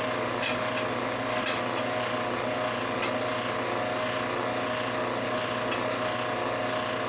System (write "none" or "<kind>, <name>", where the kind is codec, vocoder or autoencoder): none